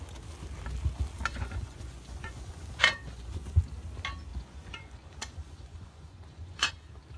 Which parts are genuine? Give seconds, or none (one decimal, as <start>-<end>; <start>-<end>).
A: 0.0-1.3; 3.6-4.3; 6.7-7.2